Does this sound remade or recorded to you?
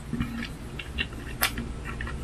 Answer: recorded